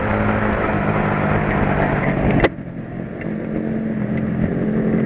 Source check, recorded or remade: recorded